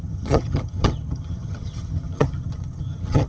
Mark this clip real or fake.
fake